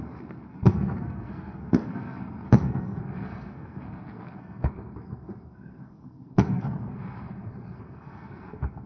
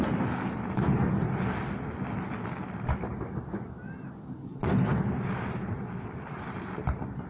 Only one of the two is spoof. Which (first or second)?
first